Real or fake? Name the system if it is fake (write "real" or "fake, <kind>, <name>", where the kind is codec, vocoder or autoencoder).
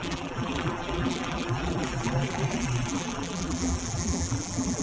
fake, vocoder, BigVGAN v2